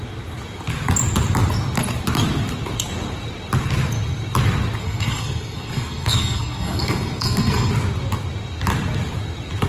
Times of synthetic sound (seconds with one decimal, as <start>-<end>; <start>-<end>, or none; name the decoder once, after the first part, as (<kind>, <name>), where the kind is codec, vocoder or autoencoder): 4.8-7.7 (codec, SNAC)